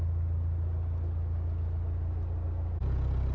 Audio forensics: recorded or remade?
recorded